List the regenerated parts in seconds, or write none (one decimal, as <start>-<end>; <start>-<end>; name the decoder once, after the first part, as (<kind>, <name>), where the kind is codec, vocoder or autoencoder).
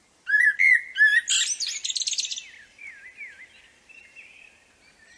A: none